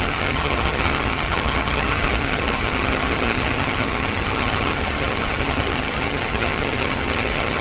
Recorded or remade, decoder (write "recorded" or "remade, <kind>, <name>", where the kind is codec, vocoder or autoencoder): remade, vocoder, HiFi-GAN